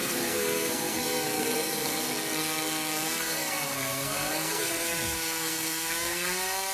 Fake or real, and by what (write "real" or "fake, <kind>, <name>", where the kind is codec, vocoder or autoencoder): fake, codec, SNAC